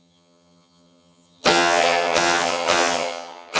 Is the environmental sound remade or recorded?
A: remade